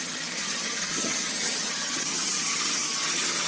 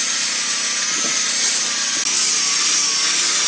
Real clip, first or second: second